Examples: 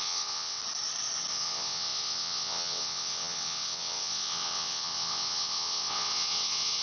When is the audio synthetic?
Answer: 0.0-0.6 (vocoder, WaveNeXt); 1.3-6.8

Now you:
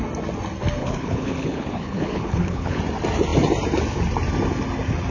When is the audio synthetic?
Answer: 0.8-2.8 (codec, HILCodec)

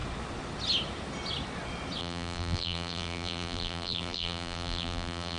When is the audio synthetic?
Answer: 2.0-5.4 (vocoder, BigVGAN v2)

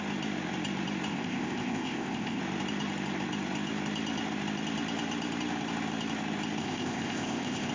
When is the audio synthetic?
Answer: 1.1-2.4 (codec, ZipCodec); 6.6-7.7

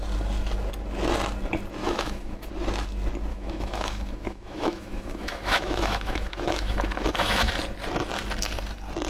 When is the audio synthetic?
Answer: 1.8-2.5 (autoencoder, DAC-VAE); 3.3-7.5

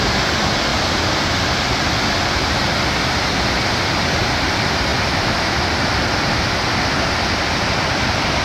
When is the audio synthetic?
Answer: none

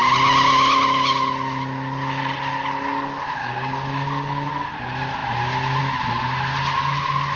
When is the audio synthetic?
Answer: 3.4-4.5 (codec, DAC)